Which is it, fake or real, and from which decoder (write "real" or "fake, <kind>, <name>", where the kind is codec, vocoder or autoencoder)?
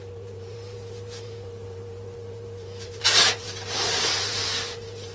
fake, vocoder, BigVGAN v2